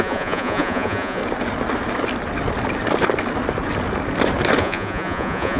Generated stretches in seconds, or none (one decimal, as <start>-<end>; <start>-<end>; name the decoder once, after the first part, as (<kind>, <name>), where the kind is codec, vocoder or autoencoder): 0.0-1.2 (vocoder, Vocos); 4.6-5.6